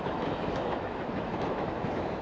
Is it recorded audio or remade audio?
remade